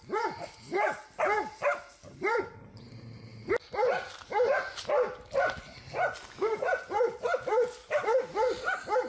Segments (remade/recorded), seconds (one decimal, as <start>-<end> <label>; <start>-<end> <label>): 0.0-9.1 recorded